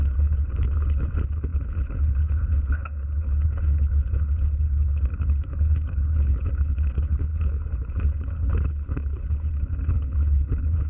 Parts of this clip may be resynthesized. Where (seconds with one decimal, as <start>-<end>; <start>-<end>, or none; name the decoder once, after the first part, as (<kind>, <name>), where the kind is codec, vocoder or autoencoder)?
0.0-10.9 (codec, HILCodec)